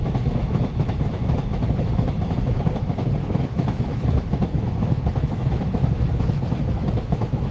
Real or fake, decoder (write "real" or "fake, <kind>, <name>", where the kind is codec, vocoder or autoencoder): fake, autoencoder, DAC-VAE